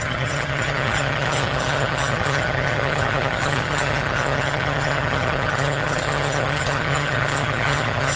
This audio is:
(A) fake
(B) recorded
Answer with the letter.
A